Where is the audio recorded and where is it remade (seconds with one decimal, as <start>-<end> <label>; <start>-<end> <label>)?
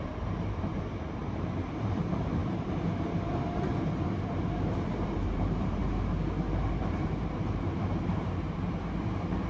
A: 0.0-5.8 remade; 5.8-6.5 recorded; 6.5-9.5 remade